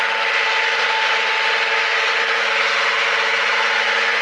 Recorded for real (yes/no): yes